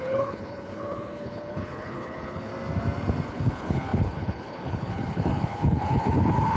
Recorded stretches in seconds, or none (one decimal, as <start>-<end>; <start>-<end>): 2.5-3.3